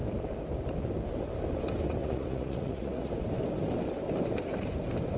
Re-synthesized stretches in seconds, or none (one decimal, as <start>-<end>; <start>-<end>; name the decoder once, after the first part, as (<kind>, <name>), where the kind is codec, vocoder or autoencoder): 2.0-3.1 (vocoder, Vocos)